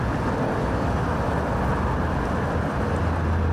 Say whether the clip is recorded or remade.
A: recorded